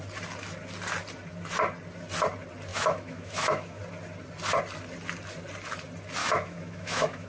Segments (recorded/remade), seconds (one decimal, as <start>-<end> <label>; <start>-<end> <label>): 0.0-2.7 recorded; 2.7-3.8 remade; 3.8-6.2 recorded; 6.2-7.3 remade